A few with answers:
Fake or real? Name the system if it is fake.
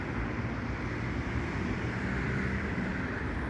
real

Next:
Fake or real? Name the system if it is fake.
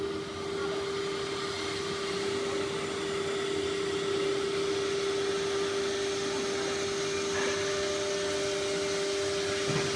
real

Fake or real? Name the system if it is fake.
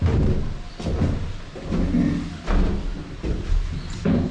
real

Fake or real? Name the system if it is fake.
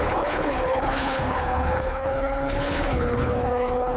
fake, codec, HILCodec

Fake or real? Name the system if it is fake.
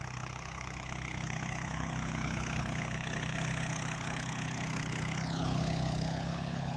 fake, codec, HILCodec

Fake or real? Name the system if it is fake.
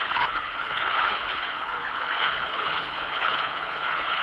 fake, codec, HILCodec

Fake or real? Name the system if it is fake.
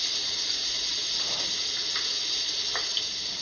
real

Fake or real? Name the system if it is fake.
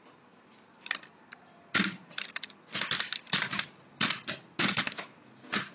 real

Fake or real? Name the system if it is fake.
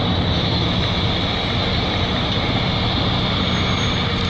real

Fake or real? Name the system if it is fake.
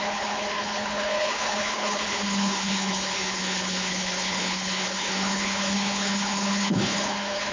fake, codec, HILCodec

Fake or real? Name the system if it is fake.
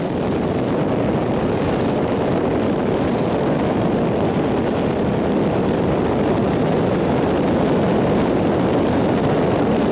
real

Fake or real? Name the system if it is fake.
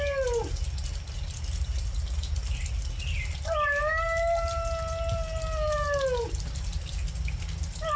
real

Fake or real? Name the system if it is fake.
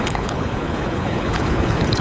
fake, codec, HILCodec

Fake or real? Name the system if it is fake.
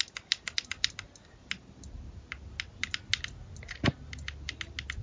real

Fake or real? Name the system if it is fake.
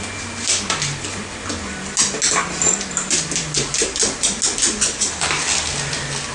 real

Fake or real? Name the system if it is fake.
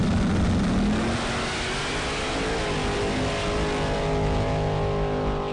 real